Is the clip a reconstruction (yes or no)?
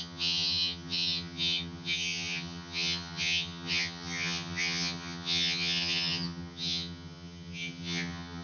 yes